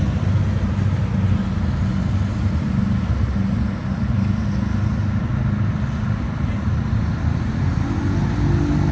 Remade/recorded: recorded